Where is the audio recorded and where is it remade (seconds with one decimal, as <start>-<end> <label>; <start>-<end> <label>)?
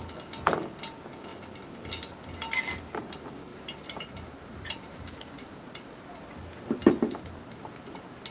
0.0-3.5 recorded; 3.5-6.2 remade; 6.2-8.3 recorded